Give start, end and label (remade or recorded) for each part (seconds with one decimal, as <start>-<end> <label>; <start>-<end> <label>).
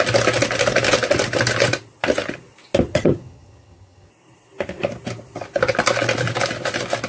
0.0-2.9 recorded; 2.9-4.1 remade; 4.1-7.1 recorded